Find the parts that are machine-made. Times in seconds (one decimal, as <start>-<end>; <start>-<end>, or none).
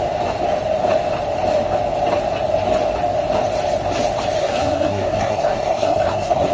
4.4-6.5